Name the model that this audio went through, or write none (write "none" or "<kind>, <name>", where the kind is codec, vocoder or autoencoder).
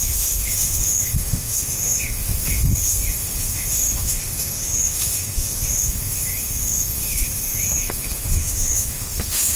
autoencoder, DAC-VAE